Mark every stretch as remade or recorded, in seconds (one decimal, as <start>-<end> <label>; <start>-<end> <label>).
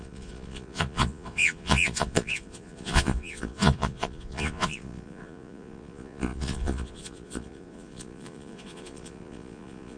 0.0-10.0 remade